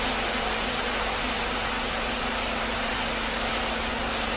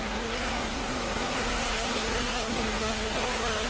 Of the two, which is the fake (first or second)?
second